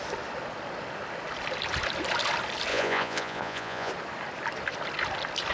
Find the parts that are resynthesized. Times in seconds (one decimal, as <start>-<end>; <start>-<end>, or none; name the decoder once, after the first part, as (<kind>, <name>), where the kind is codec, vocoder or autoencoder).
2.7-3.9 (vocoder, Vocos)